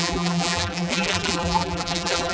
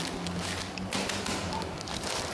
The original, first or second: second